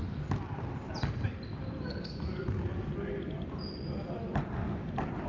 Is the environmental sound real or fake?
real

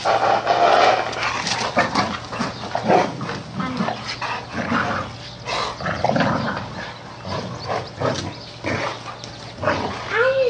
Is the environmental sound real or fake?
real